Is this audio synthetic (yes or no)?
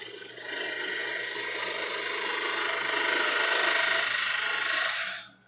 no